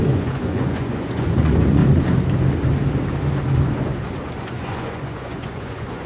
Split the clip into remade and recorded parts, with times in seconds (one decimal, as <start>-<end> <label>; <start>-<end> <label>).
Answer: 0.0-1.8 remade; 1.8-4.4 recorded; 4.4-6.1 remade